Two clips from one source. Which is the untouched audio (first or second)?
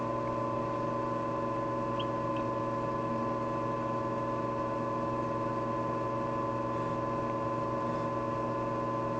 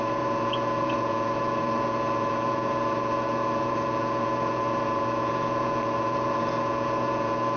first